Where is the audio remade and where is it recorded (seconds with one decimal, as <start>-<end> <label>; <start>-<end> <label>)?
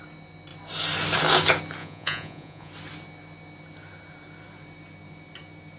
0.0-1.8 recorded; 1.8-2.7 remade; 2.7-5.8 recorded